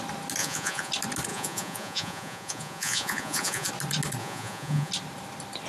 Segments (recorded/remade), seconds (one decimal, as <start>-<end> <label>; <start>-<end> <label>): 0.0-0.4 recorded; 0.4-0.9 remade; 0.9-1.3 recorded; 1.3-3.7 remade; 3.7-4.2 recorded; 4.2-4.9 remade; 4.9-5.7 recorded